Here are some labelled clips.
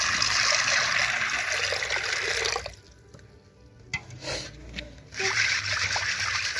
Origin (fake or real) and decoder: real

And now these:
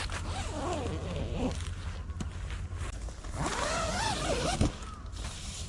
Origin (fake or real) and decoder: real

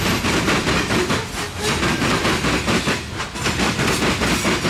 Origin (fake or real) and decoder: real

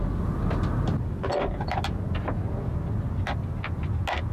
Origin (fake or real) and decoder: real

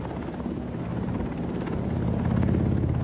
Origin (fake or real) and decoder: real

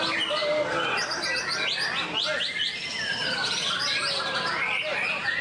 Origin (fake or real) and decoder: real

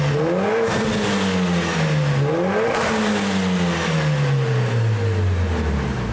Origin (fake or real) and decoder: real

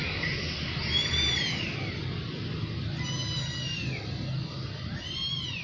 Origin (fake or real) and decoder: real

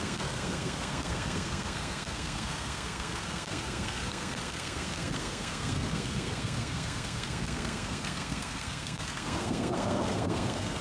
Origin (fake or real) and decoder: fake, codec, SNAC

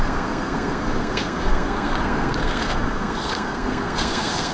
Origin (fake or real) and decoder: fake, codec, SNAC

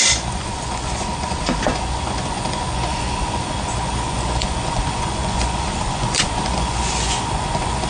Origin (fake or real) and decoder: fake, vocoder, Vocos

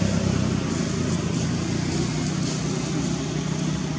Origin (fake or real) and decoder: real